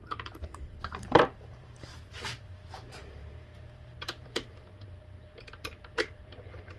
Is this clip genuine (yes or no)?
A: no